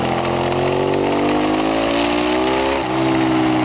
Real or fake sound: real